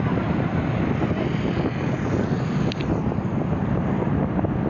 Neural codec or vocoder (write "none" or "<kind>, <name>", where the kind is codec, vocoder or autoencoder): none